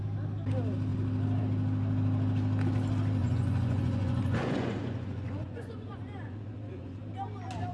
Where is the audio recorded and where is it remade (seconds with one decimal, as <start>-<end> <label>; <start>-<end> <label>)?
0.0-3.2 recorded; 3.2-7.0 remade; 7.0-7.7 recorded

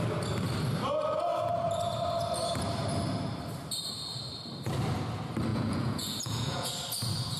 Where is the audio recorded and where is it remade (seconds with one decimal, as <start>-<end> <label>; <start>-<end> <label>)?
0.0-5.5 recorded; 5.5-6.7 remade; 6.7-7.4 recorded

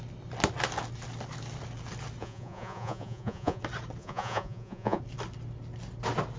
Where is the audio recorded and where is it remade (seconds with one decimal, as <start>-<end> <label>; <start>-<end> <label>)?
0.0-2.2 recorded; 2.2-3.6 remade; 3.6-4.0 recorded; 4.0-5.0 remade; 5.0-6.4 recorded

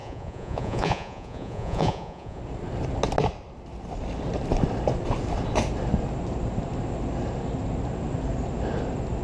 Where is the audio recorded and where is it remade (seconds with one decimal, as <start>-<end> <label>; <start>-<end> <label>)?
0.0-2.4 remade; 2.4-9.2 recorded

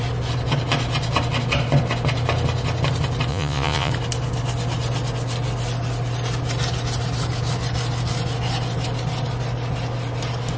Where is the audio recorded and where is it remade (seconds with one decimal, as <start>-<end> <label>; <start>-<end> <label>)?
0.0-3.3 recorded; 3.3-3.9 remade; 3.9-10.6 recorded

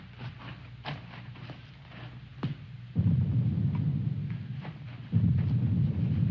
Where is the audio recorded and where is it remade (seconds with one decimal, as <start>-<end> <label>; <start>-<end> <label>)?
0.0-6.3 recorded